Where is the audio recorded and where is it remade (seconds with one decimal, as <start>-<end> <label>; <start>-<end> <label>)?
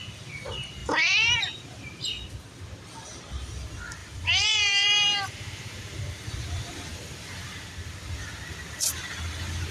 0.0-0.8 recorded; 0.8-1.4 remade; 1.4-4.0 recorded; 4.0-6.0 remade; 6.0-9.7 recorded